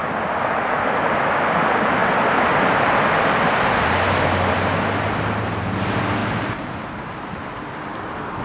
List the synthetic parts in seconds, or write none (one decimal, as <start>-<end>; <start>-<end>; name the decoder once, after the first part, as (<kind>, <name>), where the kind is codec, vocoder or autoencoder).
2.0-3.4 (vocoder, BigVGAN v2)